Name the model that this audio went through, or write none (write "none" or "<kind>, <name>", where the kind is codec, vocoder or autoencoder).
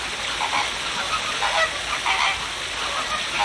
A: none